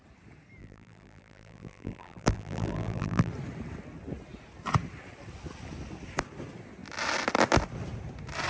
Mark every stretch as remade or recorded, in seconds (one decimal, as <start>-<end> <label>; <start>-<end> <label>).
0.0-0.6 recorded; 0.6-3.3 remade; 3.3-8.5 recorded